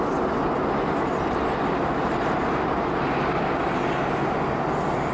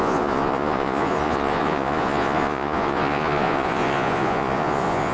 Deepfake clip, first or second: second